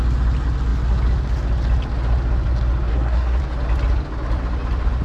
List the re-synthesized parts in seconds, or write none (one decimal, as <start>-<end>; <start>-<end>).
2.9-3.4